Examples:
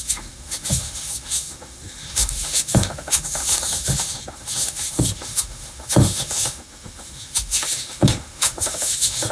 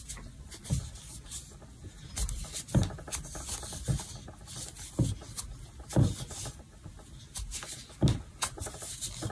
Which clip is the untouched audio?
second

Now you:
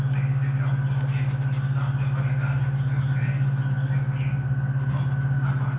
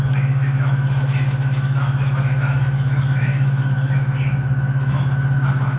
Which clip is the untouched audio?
first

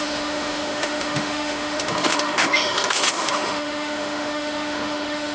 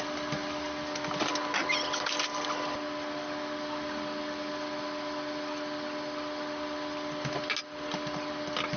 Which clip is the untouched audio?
second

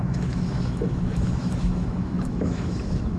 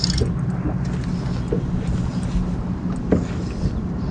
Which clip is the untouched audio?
second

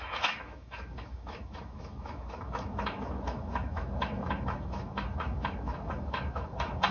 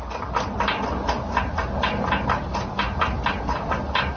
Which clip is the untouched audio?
second